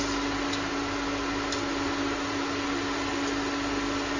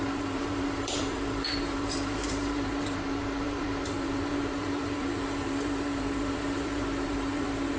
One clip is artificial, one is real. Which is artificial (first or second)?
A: second